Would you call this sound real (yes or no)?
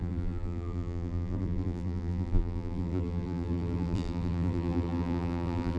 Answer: no